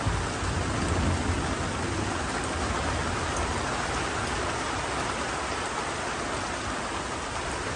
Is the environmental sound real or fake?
real